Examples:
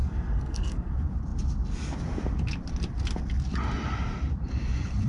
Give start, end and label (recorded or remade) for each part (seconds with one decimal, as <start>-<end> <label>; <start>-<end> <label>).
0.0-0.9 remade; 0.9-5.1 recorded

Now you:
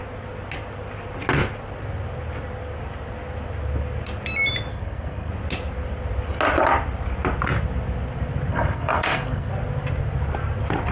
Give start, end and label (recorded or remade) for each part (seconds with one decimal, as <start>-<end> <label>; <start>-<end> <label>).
0.0-4.7 recorded; 4.7-5.3 remade; 5.3-8.5 recorded; 8.5-9.5 remade; 9.5-10.9 recorded

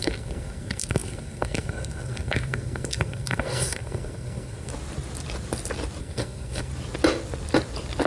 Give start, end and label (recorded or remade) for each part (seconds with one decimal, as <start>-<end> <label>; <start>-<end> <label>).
0.0-4.7 remade; 4.7-6.0 recorded; 6.0-6.7 remade; 6.7-8.1 recorded